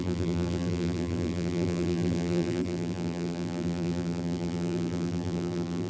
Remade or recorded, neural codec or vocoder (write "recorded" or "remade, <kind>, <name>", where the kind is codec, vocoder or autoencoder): remade, vocoder, BigVGAN v2